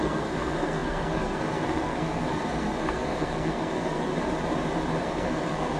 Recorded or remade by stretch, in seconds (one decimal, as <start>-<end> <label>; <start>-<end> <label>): 0.0-4.1 remade; 4.1-5.0 recorded; 5.0-5.8 remade